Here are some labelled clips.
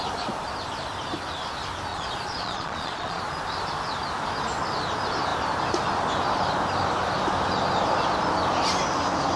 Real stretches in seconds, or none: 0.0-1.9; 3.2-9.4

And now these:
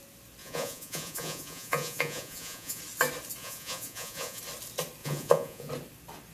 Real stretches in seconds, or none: 0.0-0.4; 2.8-3.4; 4.4-5.0; 5.7-6.3